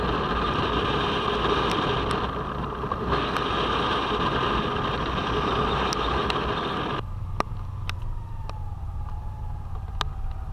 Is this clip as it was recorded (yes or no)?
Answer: yes